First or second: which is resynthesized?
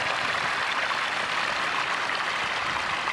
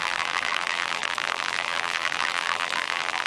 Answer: second